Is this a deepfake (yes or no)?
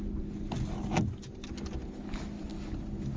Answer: no